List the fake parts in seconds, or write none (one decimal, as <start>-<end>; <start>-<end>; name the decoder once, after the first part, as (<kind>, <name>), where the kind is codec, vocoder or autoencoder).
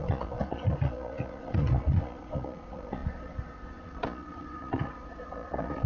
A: 0.0-5.9 (vocoder, Vocos)